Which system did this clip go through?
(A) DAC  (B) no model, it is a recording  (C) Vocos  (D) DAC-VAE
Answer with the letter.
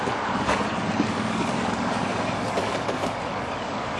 A